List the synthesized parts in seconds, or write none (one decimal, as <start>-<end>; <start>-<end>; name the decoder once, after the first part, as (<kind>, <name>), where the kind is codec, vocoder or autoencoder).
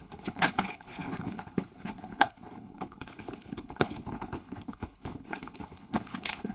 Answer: 0.0-6.5 (codec, HILCodec)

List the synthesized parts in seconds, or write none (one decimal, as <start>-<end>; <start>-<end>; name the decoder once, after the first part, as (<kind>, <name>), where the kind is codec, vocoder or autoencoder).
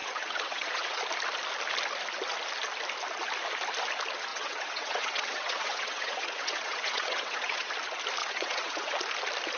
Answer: 0.0-1.0 (vocoder, WaveNeXt); 4.3-7.7; 8.2-8.9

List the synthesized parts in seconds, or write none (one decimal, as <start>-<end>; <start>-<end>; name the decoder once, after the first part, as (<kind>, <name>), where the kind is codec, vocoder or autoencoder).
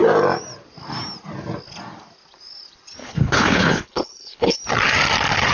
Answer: 3.0-4.6 (codec, HILCodec)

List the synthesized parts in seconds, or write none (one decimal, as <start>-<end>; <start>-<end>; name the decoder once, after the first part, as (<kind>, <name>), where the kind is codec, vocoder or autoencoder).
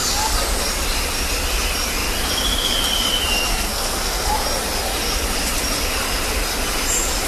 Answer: 3.5-4.3 (codec, SNAC)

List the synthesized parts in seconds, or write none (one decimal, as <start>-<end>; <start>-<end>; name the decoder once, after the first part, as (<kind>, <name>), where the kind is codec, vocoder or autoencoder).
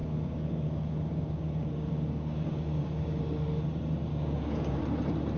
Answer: 0.0-3.2 (codec, DAC); 4.1-4.8